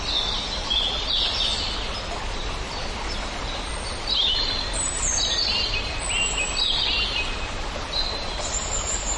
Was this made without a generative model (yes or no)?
yes